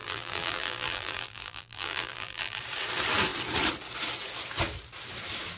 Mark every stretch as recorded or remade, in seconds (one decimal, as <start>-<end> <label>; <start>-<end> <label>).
0.0-2.6 remade; 2.6-5.6 recorded